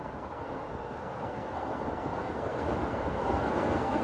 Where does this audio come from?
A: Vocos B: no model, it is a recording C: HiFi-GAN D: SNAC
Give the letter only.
D